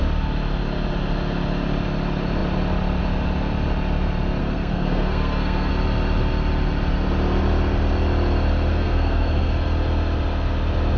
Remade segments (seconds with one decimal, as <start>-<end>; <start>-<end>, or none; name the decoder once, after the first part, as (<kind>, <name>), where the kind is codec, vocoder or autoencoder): 4.4-5.7 (codec, SNAC); 8.7-9.5